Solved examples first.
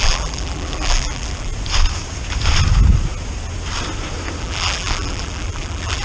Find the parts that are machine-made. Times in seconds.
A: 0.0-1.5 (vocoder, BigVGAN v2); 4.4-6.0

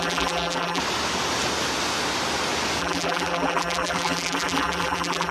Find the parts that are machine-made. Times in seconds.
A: 0.0-0.8 (vocoder, BigVGAN v2); 2.8-5.3

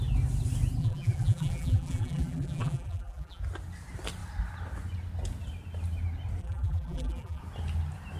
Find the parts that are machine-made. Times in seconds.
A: 0.8-3.4 (vocoder, BigVGAN v2); 6.4-7.4